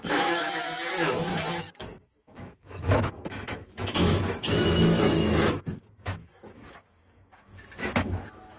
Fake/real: fake